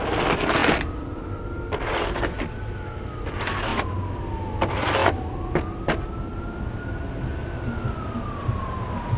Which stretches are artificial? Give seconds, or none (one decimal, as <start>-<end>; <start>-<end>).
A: none